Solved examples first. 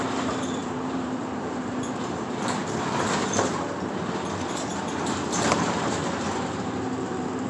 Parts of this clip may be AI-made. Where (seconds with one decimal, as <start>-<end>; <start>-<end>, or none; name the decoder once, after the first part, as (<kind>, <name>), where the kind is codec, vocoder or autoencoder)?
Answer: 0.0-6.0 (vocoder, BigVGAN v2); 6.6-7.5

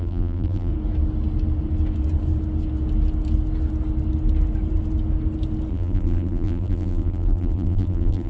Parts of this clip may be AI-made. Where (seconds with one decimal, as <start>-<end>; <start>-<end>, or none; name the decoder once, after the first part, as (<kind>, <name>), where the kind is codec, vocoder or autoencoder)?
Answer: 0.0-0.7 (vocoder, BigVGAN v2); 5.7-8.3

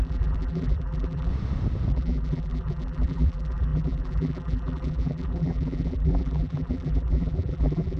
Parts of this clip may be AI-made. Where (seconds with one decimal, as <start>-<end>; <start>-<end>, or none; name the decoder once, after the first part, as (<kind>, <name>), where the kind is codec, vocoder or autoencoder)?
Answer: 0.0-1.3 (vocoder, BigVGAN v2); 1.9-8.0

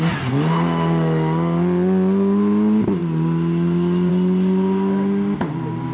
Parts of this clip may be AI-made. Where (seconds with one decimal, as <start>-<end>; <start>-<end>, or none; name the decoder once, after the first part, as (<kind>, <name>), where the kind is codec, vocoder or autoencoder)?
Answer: none

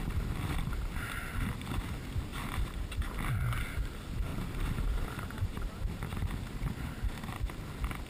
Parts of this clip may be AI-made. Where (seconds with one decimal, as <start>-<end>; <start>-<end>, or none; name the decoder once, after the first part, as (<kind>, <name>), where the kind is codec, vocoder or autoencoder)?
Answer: 2.3-3.1 (vocoder, BigVGAN v2); 4.3-7.4

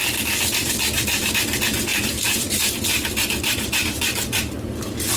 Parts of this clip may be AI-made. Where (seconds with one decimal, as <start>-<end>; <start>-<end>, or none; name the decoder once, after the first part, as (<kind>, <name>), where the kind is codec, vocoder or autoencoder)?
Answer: 0.0-1.3 (vocoder, BigVGAN v2); 1.9-5.2

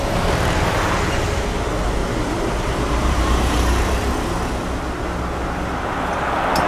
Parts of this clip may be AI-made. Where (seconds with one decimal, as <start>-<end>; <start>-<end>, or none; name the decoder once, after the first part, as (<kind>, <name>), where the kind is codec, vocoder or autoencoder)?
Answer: 2.0-4.5 (vocoder, BigVGAN v2)

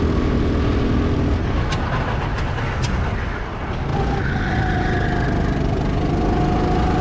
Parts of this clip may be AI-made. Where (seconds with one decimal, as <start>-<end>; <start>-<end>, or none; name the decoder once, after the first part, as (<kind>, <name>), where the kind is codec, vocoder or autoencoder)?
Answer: none